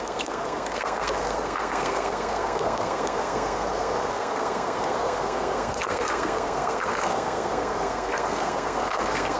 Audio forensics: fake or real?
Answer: fake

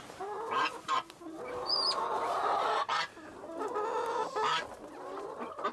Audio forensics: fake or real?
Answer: real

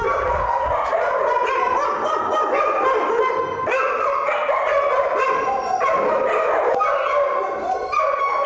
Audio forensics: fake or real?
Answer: real